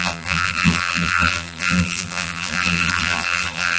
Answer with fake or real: fake